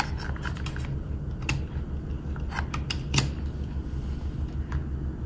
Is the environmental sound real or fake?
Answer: real